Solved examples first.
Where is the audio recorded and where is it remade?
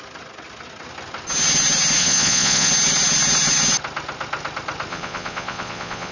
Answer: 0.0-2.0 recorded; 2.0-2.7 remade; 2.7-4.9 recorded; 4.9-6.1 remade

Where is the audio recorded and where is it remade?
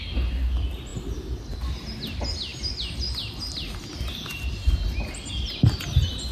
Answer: 0.0-6.3 recorded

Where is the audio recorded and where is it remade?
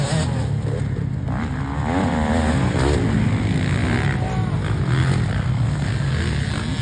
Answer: 0.0-6.8 recorded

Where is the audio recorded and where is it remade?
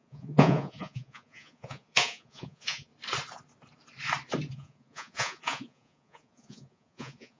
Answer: 0.0-2.9 remade; 2.9-4.5 recorded; 4.5-7.4 remade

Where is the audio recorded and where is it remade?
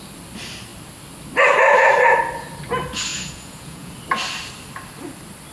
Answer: 0.0-3.1 recorded; 3.1-3.9 remade; 3.9-5.5 recorded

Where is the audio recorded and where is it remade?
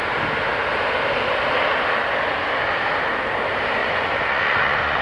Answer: 0.0-3.8 recorded; 3.8-5.0 remade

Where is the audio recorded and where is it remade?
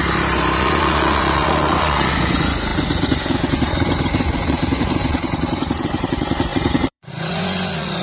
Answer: 0.0-0.6 recorded; 0.6-8.0 remade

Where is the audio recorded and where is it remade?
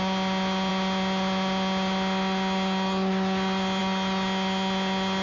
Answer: 0.0-5.2 recorded